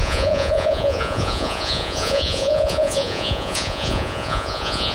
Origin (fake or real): fake